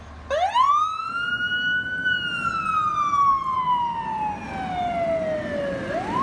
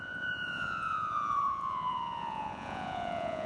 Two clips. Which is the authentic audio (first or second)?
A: first